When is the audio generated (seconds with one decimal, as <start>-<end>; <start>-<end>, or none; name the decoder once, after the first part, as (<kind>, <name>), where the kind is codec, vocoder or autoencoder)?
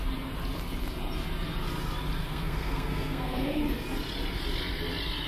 2.2-3.6 (codec, SNAC)